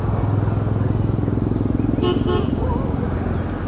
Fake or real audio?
real